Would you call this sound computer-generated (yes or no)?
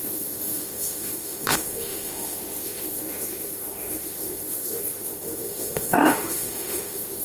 yes